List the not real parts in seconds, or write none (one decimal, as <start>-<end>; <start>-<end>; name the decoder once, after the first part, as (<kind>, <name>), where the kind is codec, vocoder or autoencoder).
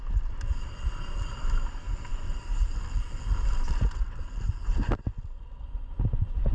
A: none